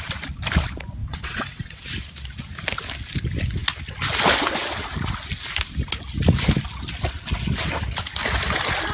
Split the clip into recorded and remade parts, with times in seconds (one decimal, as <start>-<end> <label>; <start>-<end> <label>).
0.0-1.0 recorded; 1.0-1.8 remade; 1.8-8.9 recorded